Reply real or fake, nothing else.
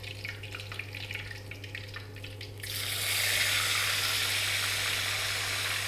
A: real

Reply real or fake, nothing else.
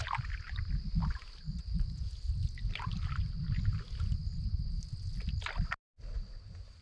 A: real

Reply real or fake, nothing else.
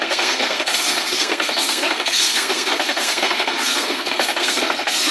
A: fake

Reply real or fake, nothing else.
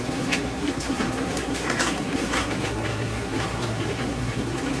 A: fake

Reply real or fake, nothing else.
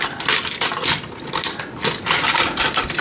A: real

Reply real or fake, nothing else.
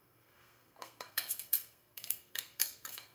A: fake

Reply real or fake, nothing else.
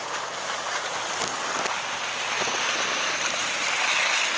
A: real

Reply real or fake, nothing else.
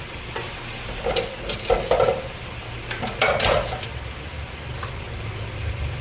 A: real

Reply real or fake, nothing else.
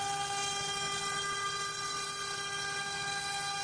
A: real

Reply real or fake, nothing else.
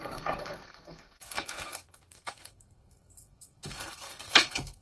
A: fake